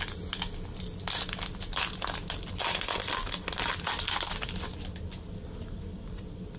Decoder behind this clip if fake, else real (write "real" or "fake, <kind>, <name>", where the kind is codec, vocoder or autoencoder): real